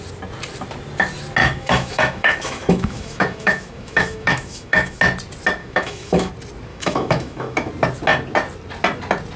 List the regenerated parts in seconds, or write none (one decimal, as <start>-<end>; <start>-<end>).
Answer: 1.4-5.0; 5.6-6.3; 6.7-7.7